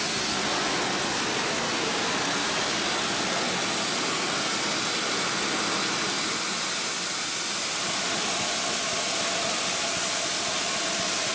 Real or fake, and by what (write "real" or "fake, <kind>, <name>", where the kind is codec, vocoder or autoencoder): real